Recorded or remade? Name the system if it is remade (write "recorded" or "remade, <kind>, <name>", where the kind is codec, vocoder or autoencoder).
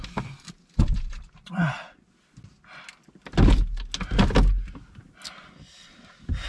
recorded